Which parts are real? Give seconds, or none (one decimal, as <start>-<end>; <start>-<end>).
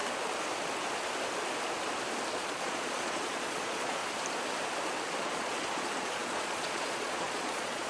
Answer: 0.0-2.3; 4.0-5.2